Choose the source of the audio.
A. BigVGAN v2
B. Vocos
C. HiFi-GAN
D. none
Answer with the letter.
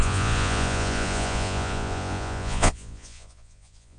B